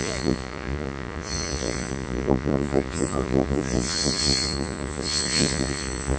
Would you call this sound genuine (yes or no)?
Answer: no